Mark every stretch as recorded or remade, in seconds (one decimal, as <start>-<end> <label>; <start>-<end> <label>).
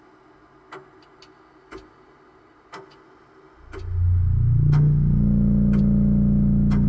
0.0-6.9 recorded